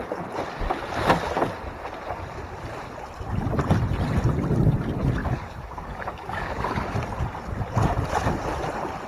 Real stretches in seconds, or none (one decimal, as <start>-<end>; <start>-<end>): 0.0-5.2; 6.9-9.1